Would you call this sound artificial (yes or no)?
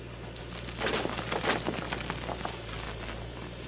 no